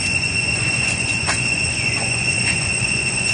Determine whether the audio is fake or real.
fake